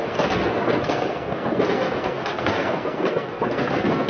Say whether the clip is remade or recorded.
remade